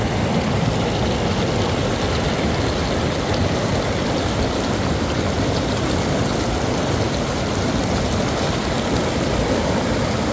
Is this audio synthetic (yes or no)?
no